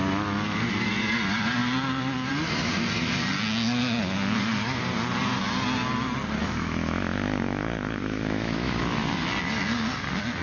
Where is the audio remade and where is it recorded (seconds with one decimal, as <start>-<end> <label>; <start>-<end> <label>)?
0.0-6.4 recorded; 6.4-8.8 remade; 8.8-10.4 recorded